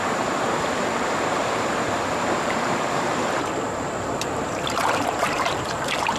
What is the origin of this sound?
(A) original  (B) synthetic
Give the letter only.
B